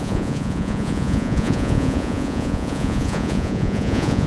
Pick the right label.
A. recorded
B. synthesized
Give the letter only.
B